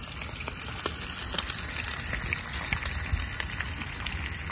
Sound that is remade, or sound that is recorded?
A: recorded